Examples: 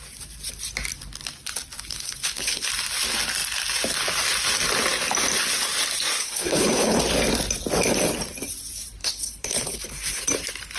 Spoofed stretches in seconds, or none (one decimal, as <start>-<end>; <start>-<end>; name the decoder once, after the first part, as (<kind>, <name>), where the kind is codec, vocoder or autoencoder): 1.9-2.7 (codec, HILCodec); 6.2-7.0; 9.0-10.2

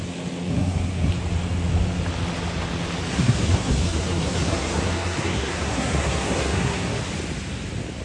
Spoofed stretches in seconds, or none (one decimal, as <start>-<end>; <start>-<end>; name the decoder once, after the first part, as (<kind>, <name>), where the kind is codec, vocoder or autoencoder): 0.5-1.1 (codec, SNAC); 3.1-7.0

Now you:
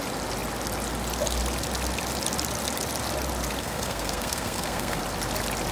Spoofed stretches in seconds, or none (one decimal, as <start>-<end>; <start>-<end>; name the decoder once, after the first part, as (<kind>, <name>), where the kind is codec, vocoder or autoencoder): 3.6-5.0 (codec, SNAC)